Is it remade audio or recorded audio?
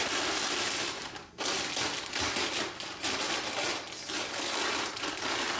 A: recorded